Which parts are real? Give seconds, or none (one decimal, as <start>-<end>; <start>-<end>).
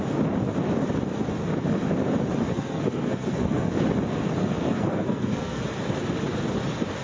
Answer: 0.0-2.5; 3.7-4.4; 5.6-7.0